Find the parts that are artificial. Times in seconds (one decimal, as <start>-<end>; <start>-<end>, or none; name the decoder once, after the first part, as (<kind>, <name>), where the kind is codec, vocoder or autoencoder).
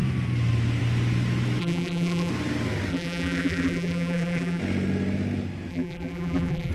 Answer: 1.6-2.3 (vocoder, BigVGAN v2); 2.9-4.6; 5.7-6.7